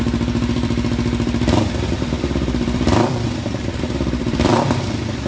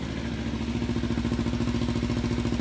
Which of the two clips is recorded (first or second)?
second